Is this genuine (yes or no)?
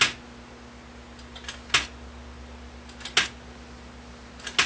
yes